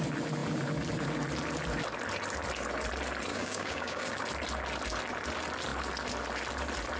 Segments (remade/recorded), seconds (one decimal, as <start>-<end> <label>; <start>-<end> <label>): 0.0-3.3 recorded; 3.3-4.1 remade; 4.1-7.0 recorded